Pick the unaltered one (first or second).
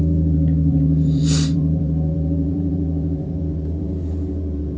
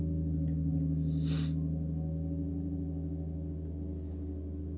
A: second